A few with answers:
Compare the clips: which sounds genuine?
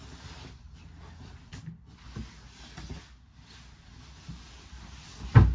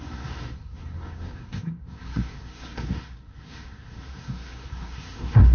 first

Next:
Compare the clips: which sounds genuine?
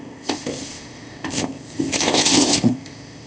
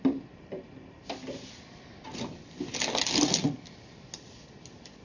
second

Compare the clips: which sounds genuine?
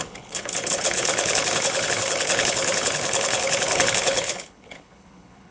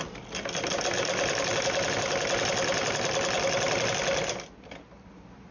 second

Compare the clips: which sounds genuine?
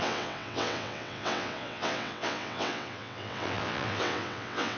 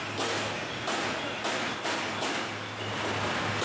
second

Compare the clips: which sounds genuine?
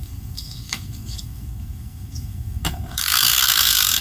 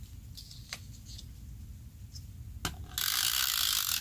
second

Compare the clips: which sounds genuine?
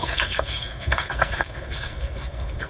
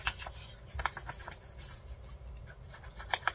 second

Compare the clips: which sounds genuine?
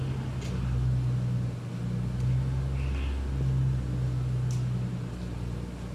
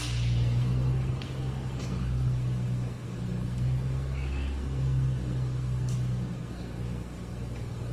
first